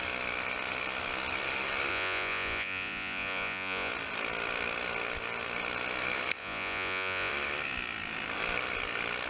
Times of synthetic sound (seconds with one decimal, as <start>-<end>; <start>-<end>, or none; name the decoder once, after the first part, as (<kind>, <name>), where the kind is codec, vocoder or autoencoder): 1.9-3.9 (vocoder, Vocos); 6.4-7.3